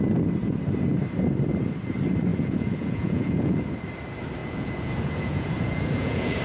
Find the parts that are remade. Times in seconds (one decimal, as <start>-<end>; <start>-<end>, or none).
2.3-3.6; 4.4-6.4